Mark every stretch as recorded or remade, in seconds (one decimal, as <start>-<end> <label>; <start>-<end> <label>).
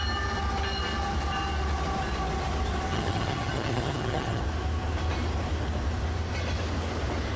0.0-2.9 recorded; 2.9-4.4 remade; 4.4-7.4 recorded